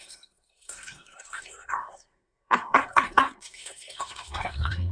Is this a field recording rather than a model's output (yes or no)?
no